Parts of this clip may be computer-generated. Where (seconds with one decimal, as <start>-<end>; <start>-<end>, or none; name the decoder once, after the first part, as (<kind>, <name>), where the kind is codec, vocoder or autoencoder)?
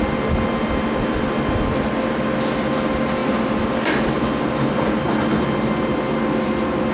none